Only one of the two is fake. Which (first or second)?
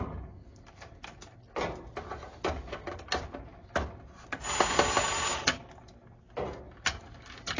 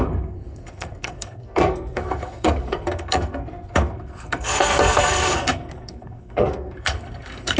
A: second